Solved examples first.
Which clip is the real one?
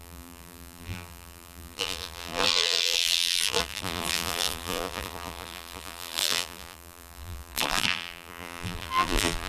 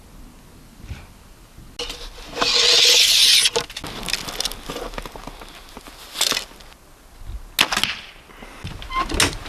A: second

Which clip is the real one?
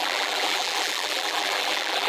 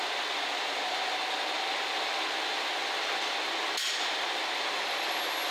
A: second